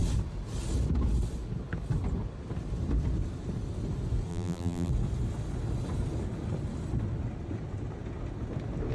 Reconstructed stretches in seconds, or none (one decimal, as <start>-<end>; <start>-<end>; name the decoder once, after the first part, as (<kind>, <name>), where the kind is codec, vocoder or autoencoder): 4.3-4.9 (vocoder, BigVGAN v2)